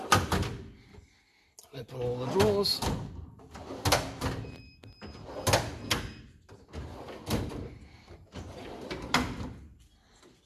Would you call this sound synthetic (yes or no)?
no